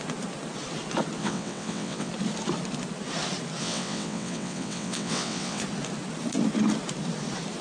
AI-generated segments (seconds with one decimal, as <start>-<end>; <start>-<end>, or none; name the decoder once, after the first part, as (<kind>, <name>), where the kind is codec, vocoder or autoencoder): 1.2-2.1 (vocoder, WaveNeXt); 3.6-5.6